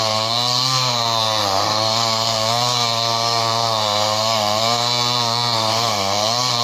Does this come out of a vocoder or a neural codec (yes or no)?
yes